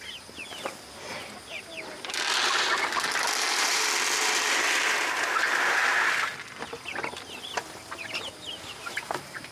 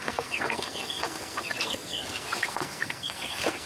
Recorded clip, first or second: first